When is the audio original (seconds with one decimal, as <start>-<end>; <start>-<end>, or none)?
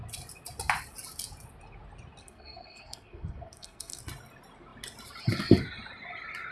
0.0-2.2; 4.0-6.5